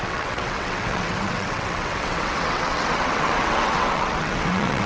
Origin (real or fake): fake